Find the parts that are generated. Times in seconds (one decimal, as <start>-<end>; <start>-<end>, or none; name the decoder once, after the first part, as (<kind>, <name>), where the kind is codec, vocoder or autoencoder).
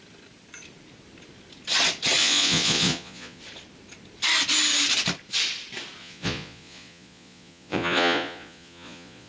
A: 2.2-3.4 (vocoder, Vocos); 6.0-9.3